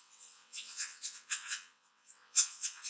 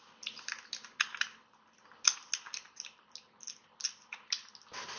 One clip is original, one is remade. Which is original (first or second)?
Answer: second